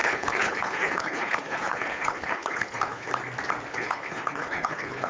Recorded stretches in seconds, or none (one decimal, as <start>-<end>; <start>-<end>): 3.1-3.7